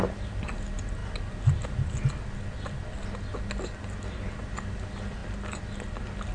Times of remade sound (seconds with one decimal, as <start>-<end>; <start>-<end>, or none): none